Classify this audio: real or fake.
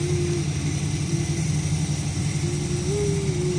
real